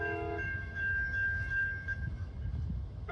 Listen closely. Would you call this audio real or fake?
fake